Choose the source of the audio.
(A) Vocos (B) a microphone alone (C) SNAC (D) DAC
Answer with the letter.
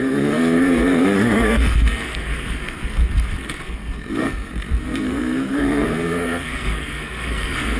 C